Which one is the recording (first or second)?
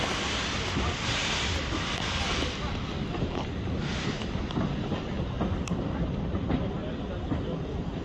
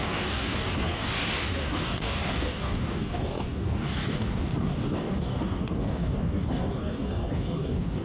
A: first